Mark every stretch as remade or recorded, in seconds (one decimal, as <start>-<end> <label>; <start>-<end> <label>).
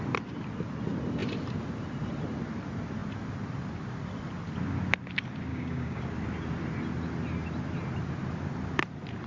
0.0-5.5 recorded; 5.5-6.0 remade; 6.0-9.3 recorded